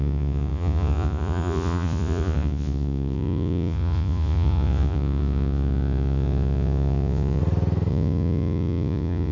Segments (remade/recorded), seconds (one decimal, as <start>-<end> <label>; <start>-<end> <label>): 0.0-7.4 remade; 7.4-7.9 recorded; 7.9-9.3 remade

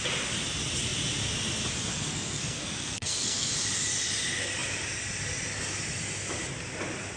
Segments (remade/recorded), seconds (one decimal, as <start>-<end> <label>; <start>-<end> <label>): 0.0-1.9 recorded; 1.9-3.5 remade; 3.5-7.2 recorded